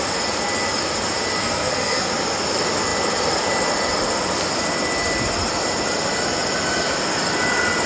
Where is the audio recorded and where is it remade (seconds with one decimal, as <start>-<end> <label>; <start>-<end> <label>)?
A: 0.0-1.4 recorded; 1.4-2.1 remade; 2.1-7.9 recorded